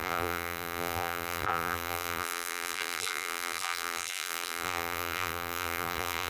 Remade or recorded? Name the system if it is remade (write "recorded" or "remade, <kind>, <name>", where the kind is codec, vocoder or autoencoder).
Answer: remade, vocoder, BigVGAN v2